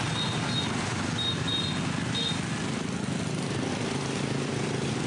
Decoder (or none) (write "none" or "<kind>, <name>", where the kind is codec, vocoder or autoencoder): none